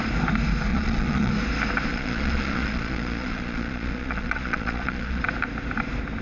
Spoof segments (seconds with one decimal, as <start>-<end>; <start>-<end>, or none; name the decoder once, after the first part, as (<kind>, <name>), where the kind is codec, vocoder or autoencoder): 0.7-1.3 (vocoder, Vocos); 1.9-5.2